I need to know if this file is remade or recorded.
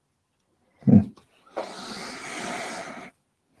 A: recorded